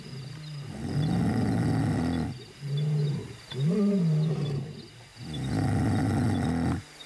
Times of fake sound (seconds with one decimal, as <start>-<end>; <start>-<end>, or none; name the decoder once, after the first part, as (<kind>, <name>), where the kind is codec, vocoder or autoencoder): none